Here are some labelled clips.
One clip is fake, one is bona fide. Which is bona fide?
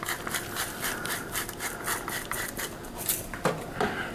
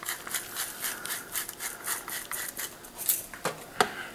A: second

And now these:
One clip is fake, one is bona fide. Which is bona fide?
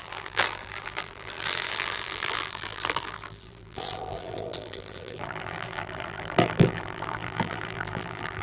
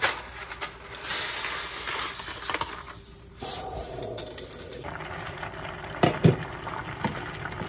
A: second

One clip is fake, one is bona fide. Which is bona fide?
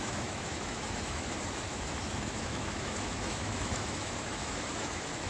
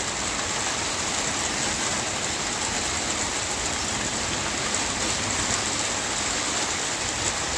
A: second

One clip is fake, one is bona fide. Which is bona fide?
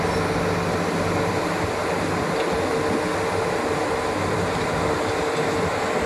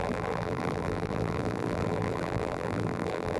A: first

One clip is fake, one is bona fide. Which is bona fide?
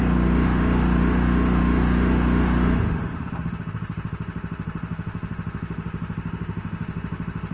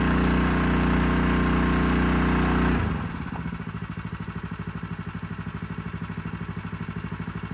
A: second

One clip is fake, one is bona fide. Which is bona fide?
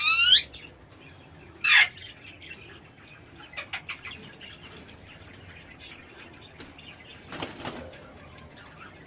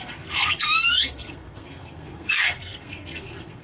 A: first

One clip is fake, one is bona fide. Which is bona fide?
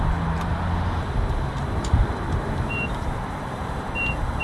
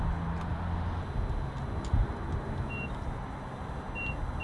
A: second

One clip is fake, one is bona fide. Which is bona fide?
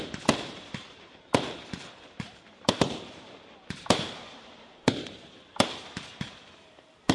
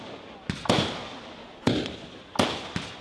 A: second